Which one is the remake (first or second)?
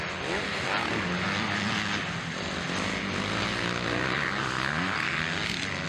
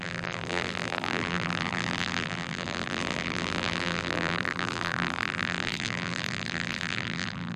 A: second